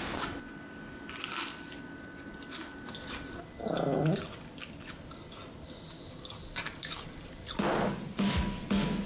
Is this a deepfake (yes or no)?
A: no